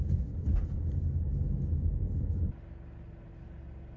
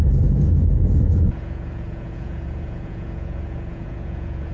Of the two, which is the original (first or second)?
first